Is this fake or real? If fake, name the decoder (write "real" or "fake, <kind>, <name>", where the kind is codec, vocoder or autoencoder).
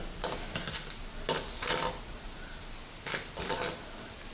real